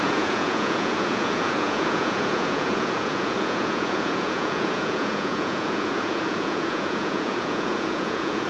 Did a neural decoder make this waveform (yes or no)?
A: yes